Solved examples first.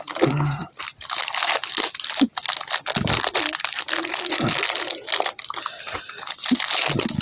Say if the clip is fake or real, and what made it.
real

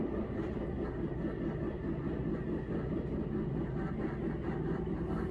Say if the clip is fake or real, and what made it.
real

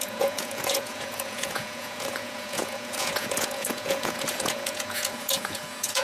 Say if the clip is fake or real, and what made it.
fake, vocoder, Vocos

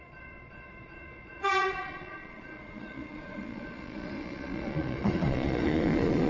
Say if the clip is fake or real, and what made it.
fake, vocoder, Vocos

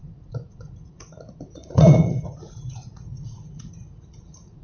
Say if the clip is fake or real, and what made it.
fake, vocoder, Vocos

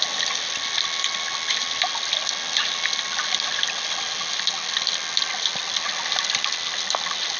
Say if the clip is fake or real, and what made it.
real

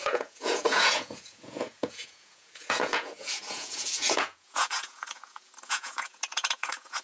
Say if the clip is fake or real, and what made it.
fake, vocoder, Vocos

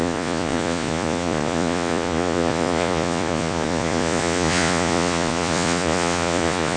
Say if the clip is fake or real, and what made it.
fake, vocoder, Vocos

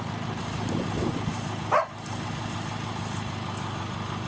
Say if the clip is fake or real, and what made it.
real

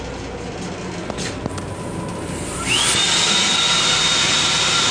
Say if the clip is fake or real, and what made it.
real